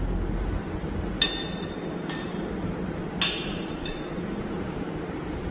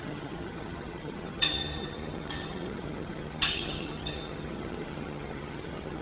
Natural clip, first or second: first